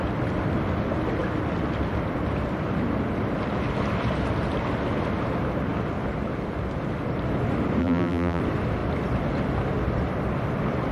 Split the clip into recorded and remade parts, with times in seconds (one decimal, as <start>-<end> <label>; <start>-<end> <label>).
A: 0.0-7.8 recorded; 7.8-8.4 remade; 8.4-10.9 recorded